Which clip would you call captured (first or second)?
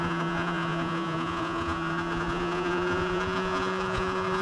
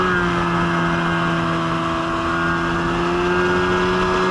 second